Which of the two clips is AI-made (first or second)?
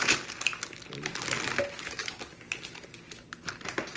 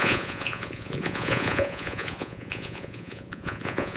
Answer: second